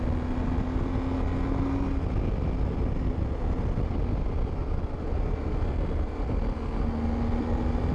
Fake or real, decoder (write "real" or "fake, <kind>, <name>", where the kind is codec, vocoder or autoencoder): real